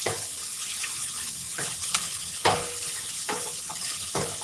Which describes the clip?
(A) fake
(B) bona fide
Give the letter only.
A